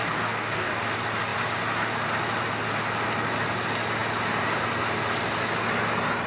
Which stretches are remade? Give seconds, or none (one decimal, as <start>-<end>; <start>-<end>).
0.0-0.8